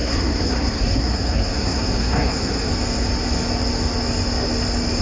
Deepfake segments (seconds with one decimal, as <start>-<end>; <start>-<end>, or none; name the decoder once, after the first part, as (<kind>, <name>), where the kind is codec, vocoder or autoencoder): 0.0-2.7 (codec, SNAC)